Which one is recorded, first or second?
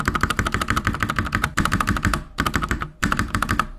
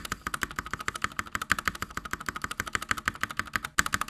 second